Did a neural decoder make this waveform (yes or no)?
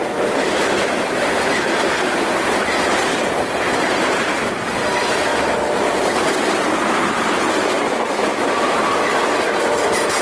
no